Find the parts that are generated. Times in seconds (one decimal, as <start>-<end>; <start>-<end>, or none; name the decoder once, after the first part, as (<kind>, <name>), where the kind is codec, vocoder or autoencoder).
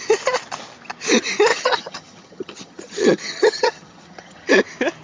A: 1.5-4.5 (vocoder, HiFi-GAN)